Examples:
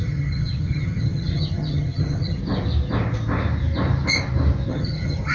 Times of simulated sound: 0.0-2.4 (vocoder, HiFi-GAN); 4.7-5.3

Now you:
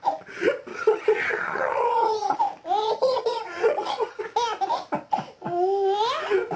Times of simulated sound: 0.7-2.4 (vocoder, HiFi-GAN); 2.8-4.2